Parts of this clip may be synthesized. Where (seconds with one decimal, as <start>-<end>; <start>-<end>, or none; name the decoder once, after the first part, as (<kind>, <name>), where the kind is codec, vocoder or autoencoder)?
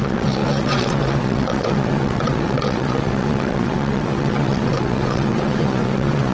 0.0-6.3 (vocoder, WaveNeXt)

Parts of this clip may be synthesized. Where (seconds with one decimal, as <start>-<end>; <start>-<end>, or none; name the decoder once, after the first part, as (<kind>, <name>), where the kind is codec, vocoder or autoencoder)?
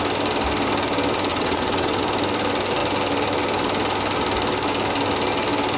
1.3-2.0 (vocoder, WaveNeXt)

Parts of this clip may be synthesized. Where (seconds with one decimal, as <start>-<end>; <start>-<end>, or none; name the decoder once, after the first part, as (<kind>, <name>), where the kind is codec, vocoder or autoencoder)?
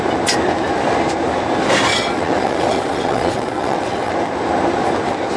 1.9-4.1 (vocoder, WaveNeXt)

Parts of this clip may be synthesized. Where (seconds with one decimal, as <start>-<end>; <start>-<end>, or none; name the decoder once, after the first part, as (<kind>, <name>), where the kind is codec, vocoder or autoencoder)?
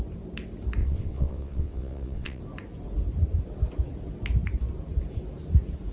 0.8-2.4 (vocoder, WaveNeXt)